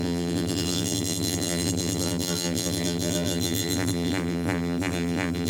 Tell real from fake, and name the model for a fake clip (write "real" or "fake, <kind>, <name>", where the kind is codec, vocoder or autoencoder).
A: fake, vocoder, BigVGAN v2